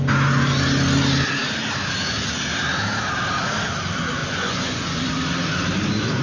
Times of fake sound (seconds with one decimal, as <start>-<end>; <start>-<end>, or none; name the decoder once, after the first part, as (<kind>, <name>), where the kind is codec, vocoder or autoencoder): 4.2-5.1 (vocoder, Vocos)